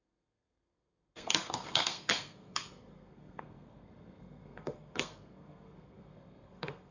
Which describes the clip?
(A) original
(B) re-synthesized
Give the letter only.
B